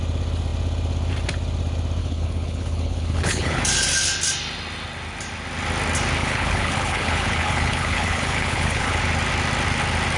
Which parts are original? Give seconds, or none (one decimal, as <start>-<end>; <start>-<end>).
0.0-2.0; 3.6-6.2; 9.0-10.2